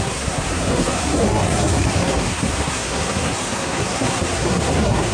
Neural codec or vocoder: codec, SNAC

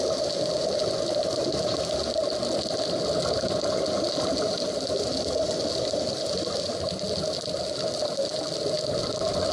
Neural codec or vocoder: none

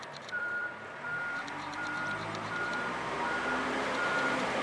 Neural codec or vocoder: vocoder, BigVGAN v2